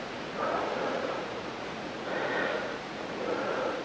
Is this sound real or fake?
fake